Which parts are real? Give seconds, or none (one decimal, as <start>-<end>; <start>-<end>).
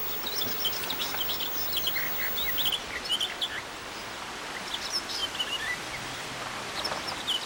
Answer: 0.0-7.5